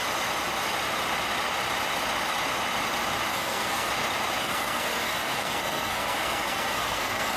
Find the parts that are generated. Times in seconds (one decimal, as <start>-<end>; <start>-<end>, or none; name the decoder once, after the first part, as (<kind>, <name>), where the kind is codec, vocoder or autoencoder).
3.3-3.9 (codec, SNAC); 4.4-7.4